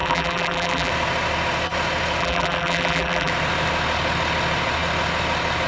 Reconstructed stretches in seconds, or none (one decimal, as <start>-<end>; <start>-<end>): 0.0-0.9; 2.2-3.3